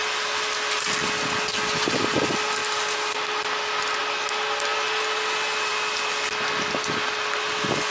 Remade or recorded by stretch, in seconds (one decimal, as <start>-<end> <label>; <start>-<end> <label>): 0.0-7.9 recorded